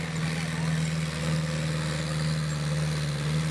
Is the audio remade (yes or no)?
no